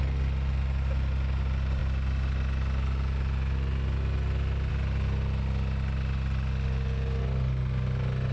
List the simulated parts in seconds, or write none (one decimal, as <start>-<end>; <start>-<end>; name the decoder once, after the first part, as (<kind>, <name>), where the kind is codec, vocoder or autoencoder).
none